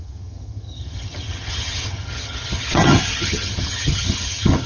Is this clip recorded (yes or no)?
no